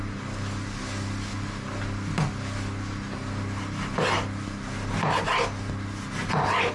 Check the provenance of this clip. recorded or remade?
recorded